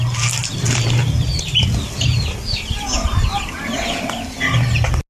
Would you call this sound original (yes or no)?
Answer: yes